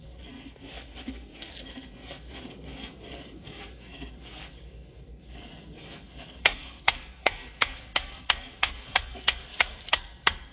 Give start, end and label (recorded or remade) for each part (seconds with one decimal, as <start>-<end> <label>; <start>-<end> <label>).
0.0-10.5 remade